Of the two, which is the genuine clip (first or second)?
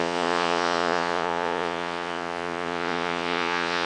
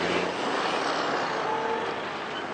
second